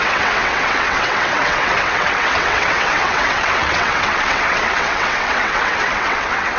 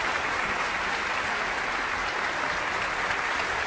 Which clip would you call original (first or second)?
second